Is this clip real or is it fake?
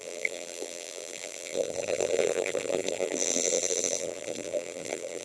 fake